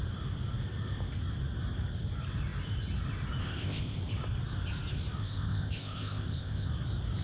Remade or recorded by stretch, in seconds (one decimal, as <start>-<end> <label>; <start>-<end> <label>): 0.0-3.4 recorded; 3.4-4.0 remade; 4.0-5.2 recorded; 5.2-6.7 remade; 6.7-7.2 recorded